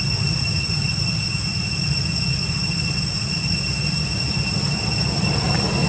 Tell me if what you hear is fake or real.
real